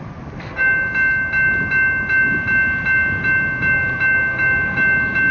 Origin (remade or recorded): recorded